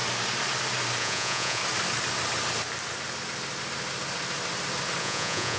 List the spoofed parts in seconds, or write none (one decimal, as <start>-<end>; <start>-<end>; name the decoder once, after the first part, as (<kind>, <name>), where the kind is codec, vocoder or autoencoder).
1.0-1.6 (vocoder, Vocos); 5.0-5.6